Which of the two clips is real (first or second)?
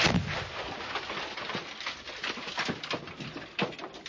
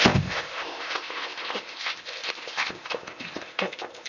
first